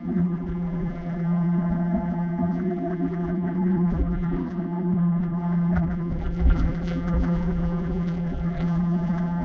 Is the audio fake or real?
fake